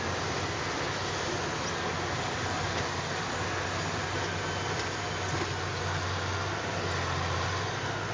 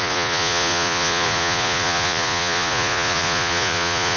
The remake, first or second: second